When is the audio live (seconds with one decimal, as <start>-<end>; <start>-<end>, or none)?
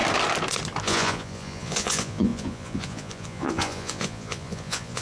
0.0-0.8